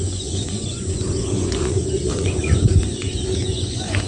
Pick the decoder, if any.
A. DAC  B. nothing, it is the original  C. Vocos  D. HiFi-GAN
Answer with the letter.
C